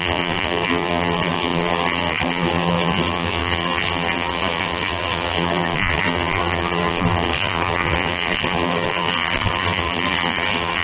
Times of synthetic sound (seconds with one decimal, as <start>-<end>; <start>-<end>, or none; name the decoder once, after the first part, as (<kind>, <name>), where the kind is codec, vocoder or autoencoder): 0.0-10.8 (vocoder, BigVGAN v2)